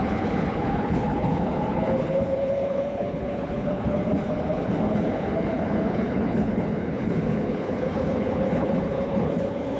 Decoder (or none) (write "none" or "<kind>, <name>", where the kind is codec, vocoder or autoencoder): codec, HILCodec